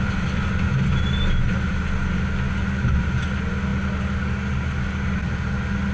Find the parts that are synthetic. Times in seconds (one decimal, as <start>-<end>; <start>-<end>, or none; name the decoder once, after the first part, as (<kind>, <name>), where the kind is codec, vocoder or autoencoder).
none